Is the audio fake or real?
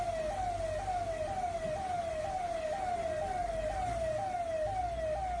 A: real